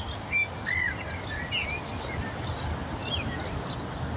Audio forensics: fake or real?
real